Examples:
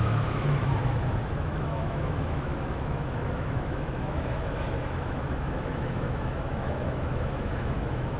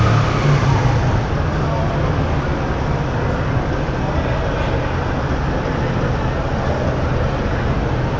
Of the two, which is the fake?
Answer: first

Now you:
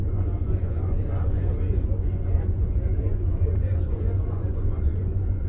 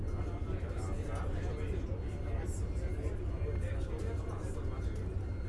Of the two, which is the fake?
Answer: first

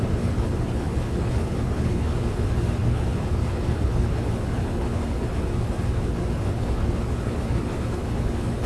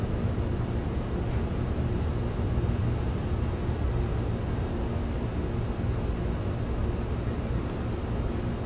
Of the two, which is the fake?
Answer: first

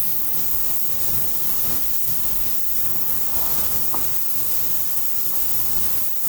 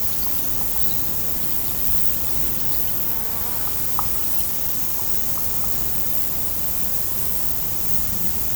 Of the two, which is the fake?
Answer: first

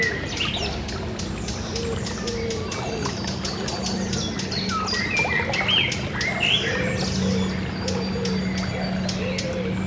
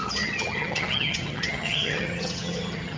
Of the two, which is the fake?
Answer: second